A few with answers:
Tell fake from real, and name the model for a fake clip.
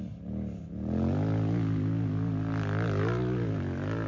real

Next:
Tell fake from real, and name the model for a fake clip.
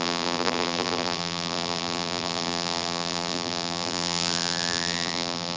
fake, vocoder, BigVGAN v2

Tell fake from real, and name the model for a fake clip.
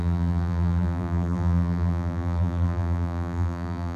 fake, vocoder, BigVGAN v2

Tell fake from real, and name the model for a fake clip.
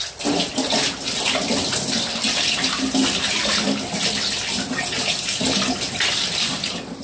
real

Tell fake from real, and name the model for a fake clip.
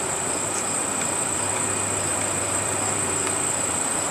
fake, vocoder, BigVGAN v2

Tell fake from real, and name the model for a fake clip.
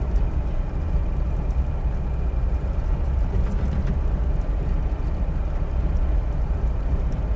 fake, vocoder, BigVGAN v2